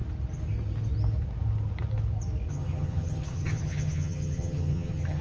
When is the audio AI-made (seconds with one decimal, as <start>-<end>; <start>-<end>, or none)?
2.5-5.2